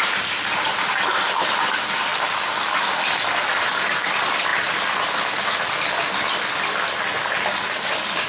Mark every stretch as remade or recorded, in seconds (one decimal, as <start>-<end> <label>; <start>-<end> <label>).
0.0-2.1 remade; 2.1-3.9 recorded; 3.9-4.5 remade; 4.5-7.7 recorded; 7.7-8.3 remade